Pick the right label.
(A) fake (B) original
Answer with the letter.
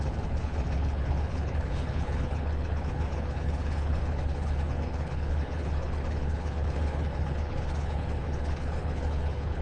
A